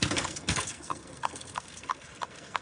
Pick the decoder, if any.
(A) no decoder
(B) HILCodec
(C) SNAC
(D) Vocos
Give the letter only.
C